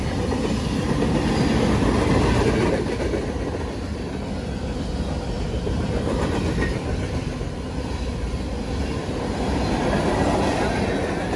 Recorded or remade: recorded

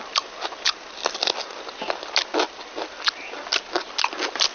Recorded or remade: recorded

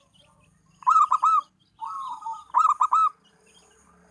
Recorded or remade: recorded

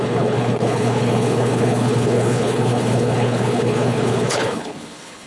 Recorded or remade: remade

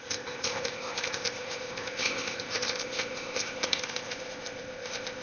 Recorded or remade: remade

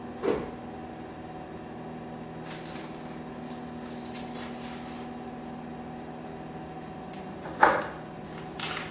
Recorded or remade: recorded